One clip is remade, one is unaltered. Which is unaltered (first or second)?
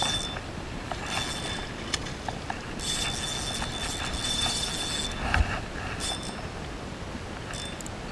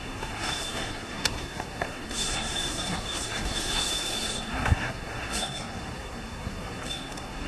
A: first